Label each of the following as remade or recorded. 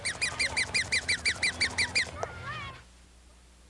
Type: recorded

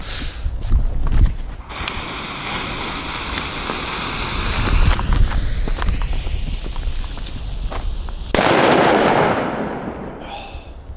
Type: recorded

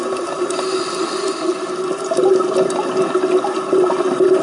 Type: recorded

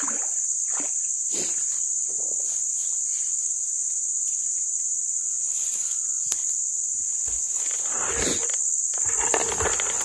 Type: recorded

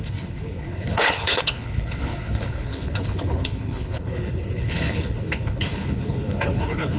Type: remade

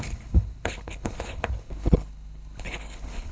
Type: remade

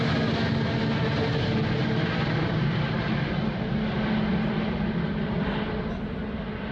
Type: recorded